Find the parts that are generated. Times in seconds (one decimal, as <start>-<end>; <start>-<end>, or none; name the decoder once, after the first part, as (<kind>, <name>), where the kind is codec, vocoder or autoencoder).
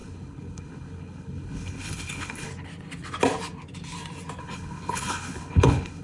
0.0-2.5 (codec, HILCodec); 4.4-6.0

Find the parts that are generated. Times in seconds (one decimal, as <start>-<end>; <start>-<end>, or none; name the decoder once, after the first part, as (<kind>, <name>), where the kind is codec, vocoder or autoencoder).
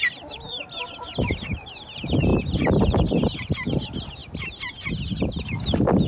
none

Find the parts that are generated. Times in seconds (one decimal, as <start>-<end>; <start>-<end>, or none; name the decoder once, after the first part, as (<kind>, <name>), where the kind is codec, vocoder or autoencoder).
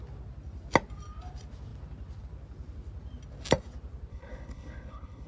4.1-5.3 (codec, HILCodec)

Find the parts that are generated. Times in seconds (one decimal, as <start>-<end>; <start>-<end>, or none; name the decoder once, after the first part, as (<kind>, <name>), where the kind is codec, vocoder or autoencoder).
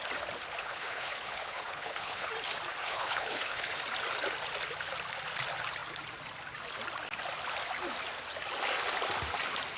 0.6-2.3 (codec, HILCodec); 2.8-3.8